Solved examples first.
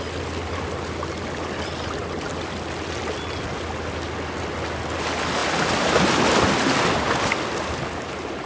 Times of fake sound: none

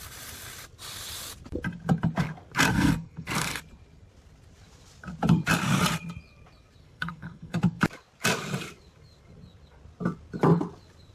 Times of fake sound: 2.7-3.6 (codec, SNAC); 6.8-7.8

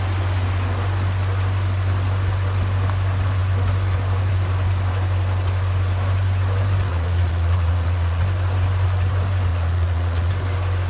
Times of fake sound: 6.9-8.2 (vocoder, Vocos); 9.5-10.3

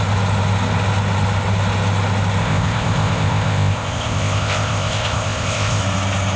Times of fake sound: 2.4-5.8 (codec, ZipCodec)

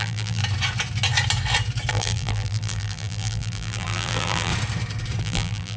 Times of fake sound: 0.0-0.4 (vocoder, BigVGAN v2); 1.9-4.5; 5.2-5.8

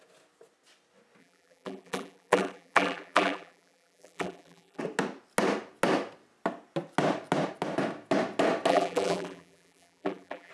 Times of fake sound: 1.2-4.8 (vocoder, BigVGAN v2); 8.7-10.5